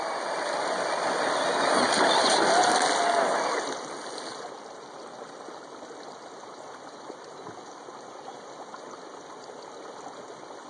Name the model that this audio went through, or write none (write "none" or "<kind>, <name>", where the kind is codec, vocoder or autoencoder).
none